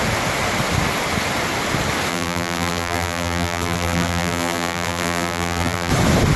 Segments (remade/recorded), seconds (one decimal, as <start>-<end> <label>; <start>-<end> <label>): 0.0-2.1 recorded; 2.1-5.9 remade; 5.9-6.4 recorded